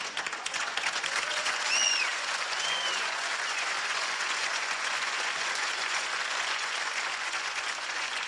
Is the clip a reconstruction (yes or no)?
yes